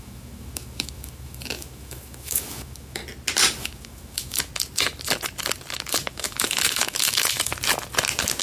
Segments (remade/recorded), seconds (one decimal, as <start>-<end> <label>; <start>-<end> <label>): 0.0-3.0 remade; 3.0-3.6 recorded; 3.6-4.5 remade; 4.5-6.1 recorded; 6.1-7.5 remade; 7.5-8.4 recorded